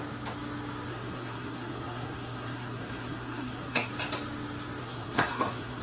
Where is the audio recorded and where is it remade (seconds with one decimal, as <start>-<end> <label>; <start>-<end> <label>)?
0.0-0.9 recorded; 0.9-3.9 remade; 3.9-4.8 recorded; 4.8-5.8 remade